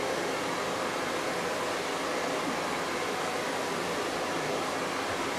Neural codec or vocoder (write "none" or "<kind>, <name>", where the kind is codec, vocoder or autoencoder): none